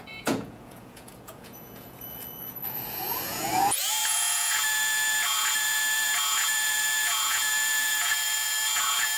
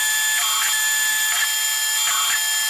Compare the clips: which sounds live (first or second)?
second